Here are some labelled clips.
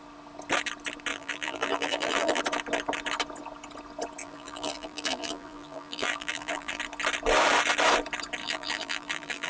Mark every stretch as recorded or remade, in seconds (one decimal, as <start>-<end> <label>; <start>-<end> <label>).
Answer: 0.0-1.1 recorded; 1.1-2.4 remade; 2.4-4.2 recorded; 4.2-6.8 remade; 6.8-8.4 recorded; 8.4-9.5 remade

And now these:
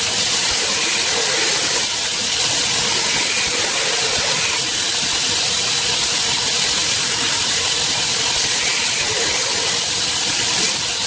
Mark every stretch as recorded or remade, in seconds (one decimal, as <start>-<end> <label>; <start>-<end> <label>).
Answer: 0.0-11.1 recorded

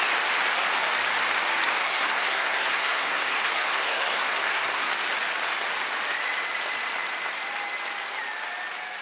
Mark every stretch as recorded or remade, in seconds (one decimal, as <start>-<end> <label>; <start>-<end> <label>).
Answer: 0.0-1.8 recorded; 1.8-4.9 remade; 4.9-9.0 recorded